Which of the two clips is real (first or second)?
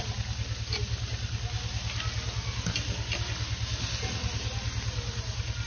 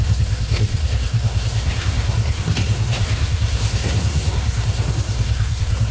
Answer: first